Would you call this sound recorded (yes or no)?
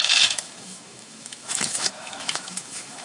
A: no